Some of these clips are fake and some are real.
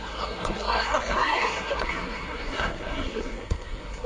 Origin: fake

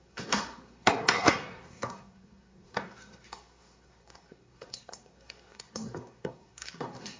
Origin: fake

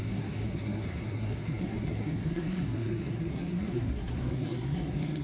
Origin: fake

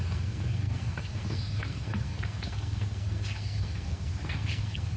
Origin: fake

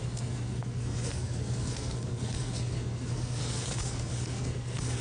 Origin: fake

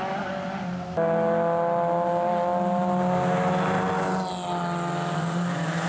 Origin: real